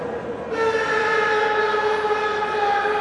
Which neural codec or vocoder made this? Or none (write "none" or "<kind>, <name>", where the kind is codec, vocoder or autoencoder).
none